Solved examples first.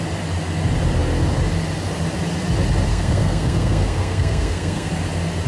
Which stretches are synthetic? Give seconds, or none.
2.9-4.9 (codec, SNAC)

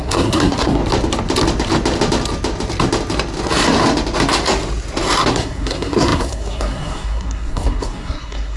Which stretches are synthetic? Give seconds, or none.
0.0-0.8 (codec, SNAC); 5.3-8.6

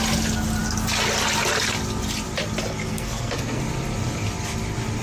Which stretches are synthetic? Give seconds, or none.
2.8-3.6 (codec, SNAC)

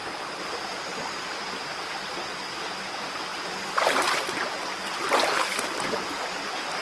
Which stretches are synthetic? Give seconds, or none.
none

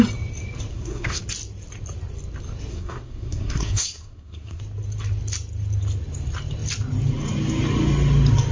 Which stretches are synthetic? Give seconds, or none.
0.7-1.2 (codec, SNAC); 2.7-4.6

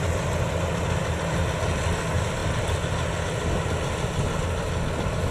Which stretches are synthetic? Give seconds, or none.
none

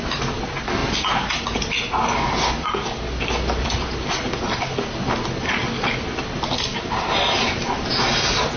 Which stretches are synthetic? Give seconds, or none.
none